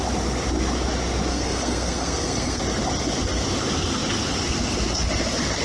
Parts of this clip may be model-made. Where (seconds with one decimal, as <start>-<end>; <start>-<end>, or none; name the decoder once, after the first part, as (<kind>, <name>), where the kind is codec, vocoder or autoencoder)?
1.3-2.6 (codec, SNAC)